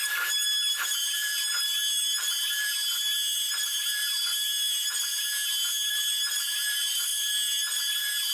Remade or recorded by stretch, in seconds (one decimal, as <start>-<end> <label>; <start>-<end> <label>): 0.0-5.1 remade; 5.1-5.9 recorded; 5.9-8.3 remade